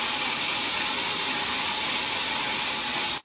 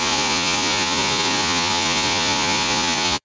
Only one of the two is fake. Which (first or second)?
second